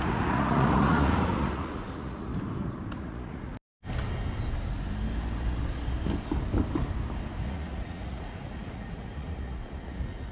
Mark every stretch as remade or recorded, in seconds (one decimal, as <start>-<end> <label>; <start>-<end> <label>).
0.0-2.3 remade; 2.3-3.0 recorded; 3.0-3.5 remade; 3.5-7.4 recorded; 7.4-10.3 remade